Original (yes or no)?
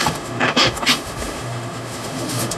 no